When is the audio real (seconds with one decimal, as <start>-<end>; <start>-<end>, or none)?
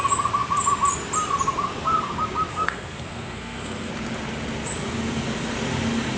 0.0-2.5; 3.9-6.2